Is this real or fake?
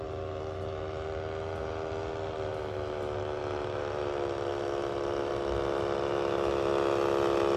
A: real